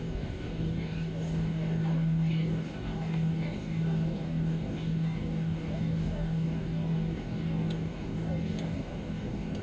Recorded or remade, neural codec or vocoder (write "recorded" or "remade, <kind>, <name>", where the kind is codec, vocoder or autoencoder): remade, codec, DAC